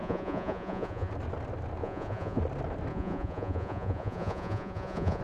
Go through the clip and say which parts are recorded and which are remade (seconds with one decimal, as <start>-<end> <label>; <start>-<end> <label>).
0.0-1.1 remade; 1.1-1.8 recorded; 1.8-2.4 remade; 2.4-2.9 recorded; 2.9-5.2 remade